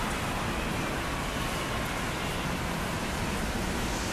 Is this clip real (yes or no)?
yes